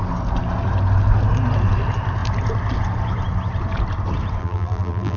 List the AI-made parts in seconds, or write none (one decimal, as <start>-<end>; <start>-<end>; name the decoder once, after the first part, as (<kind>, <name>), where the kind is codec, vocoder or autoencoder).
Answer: 4.4-5.2 (vocoder, BigVGAN v2)